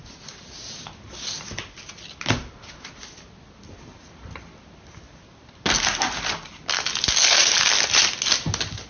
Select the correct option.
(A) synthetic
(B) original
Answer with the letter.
B